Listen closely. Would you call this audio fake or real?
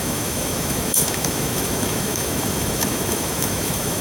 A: fake